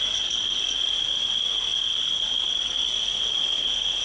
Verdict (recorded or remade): remade